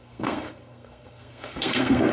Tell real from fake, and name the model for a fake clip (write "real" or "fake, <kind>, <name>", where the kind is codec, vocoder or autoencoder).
fake, codec, SNAC